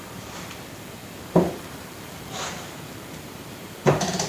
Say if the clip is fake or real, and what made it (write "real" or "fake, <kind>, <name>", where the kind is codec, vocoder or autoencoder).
fake, vocoder, BigVGAN v2